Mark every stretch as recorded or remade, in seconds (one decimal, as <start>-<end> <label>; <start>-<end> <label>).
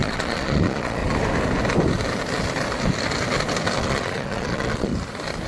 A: 0.0-1.0 remade; 1.0-3.8 recorded; 3.8-4.9 remade; 4.9-5.5 recorded